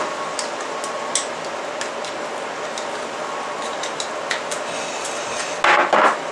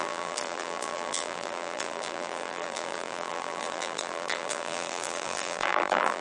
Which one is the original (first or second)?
first